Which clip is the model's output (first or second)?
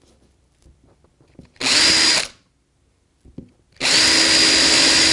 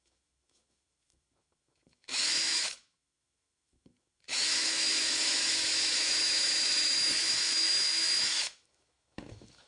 second